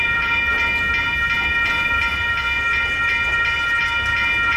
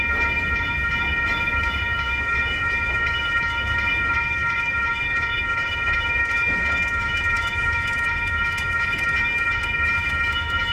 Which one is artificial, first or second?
second